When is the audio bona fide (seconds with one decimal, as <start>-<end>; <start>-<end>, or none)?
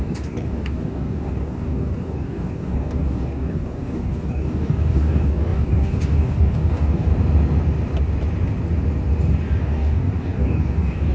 7.1-9.6